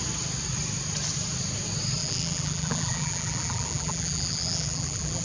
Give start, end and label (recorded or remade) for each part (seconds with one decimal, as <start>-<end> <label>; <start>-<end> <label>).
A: 0.0-2.0 recorded; 2.0-5.2 remade